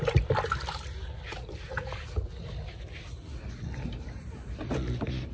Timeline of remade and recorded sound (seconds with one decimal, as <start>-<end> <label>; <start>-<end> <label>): 0.0-5.3 recorded